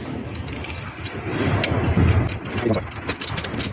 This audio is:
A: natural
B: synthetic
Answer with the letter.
A